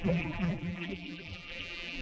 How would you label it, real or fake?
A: fake